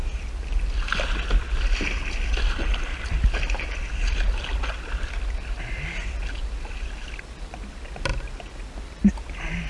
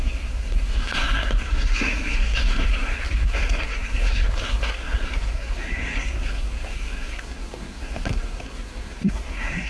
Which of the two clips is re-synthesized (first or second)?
second